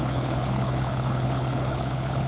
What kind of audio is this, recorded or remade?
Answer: remade